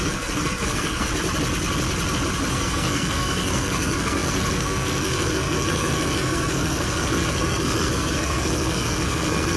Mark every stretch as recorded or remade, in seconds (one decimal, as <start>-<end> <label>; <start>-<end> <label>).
0.0-1.1 remade; 1.1-2.5 recorded; 2.5-9.6 remade